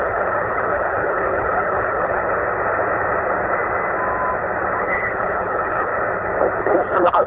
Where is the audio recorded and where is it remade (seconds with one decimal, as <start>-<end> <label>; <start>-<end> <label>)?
0.0-2.2 remade; 2.2-4.8 recorded; 4.8-5.9 remade; 5.9-6.6 recorded; 6.6-7.3 remade

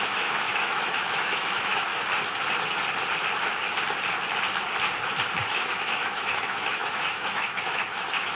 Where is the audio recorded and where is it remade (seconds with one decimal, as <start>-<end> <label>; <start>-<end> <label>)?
0.0-1.9 remade; 1.9-5.5 recorded; 5.5-8.3 remade

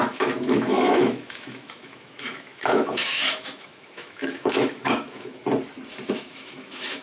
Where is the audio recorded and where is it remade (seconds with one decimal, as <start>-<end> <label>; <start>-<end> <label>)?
0.0-5.4 remade; 5.4-6.1 recorded; 6.1-7.0 remade

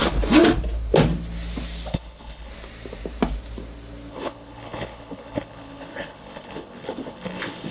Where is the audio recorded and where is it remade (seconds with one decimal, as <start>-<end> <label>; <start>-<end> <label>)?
0.0-1.9 recorded; 1.9-2.5 remade; 2.5-4.1 recorded; 4.1-7.7 remade

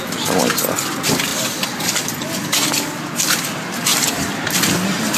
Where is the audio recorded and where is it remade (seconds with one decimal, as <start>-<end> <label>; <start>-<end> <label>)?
0.0-5.2 recorded

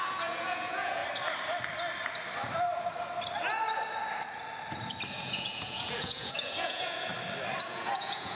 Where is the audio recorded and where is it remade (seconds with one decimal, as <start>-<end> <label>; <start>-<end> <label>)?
0.0-1.0 remade; 1.0-5.1 recorded; 5.1-7.1 remade; 7.1-7.7 recorded; 7.7-8.4 remade

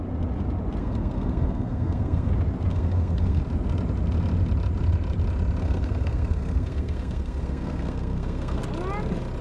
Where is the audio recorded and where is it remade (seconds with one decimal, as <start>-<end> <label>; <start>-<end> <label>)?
0.0-0.8 recorded; 0.8-2.3 remade; 2.3-2.7 recorded; 2.7-3.4 remade; 3.4-5.6 recorded; 5.6-8.6 remade; 8.6-9.4 recorded

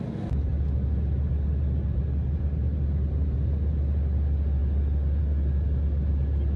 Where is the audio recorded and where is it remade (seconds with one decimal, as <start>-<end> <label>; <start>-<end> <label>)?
0.0-6.6 recorded